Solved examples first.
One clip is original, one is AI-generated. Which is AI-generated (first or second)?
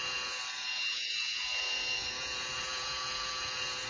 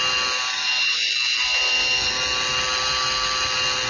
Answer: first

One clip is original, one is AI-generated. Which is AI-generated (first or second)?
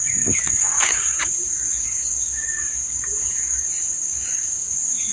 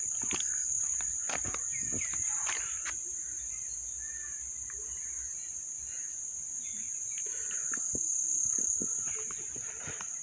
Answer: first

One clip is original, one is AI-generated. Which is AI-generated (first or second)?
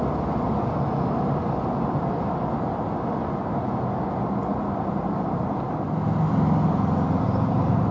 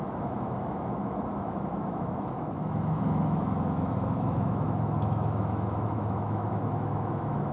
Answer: second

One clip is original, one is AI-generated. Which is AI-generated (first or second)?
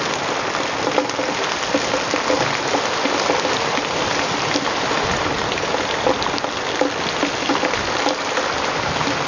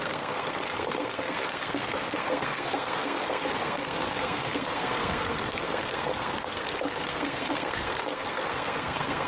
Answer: second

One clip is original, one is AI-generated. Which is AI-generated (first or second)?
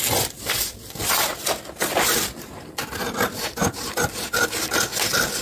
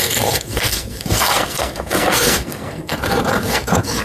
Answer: second